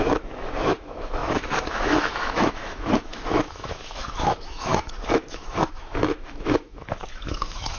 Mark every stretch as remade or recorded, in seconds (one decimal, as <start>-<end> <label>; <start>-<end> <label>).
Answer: 0.0-7.8 remade